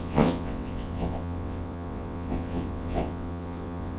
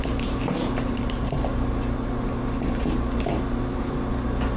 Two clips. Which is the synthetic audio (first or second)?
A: first